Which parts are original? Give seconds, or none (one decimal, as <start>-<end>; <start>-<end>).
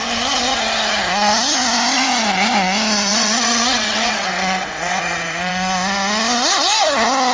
0.0-3.1; 5.5-7.3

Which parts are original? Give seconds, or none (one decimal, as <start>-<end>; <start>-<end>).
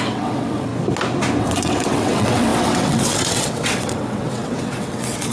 0.7-1.4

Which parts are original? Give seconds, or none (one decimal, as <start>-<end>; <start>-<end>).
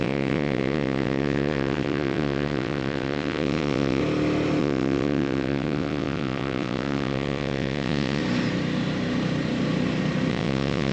4.0-4.6; 8.2-10.3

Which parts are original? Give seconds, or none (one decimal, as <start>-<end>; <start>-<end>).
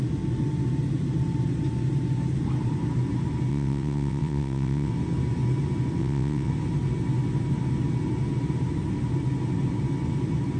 0.0-3.5; 4.9-6.0; 6.5-10.6